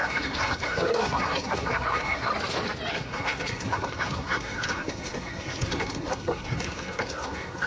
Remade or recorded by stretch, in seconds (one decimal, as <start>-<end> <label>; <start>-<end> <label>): 0.0-2.3 remade; 2.3-2.9 recorded; 2.9-7.7 remade